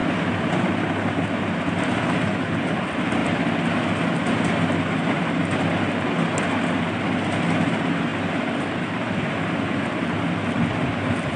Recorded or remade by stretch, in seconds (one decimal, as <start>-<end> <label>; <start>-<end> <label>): 0.0-1.1 remade; 1.1-11.4 recorded